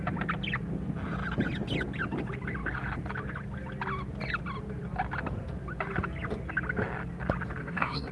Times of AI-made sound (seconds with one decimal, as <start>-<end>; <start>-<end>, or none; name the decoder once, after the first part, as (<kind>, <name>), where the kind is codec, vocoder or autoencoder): 7.6-8.1 (codec, SNAC)